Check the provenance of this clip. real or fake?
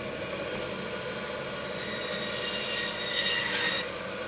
real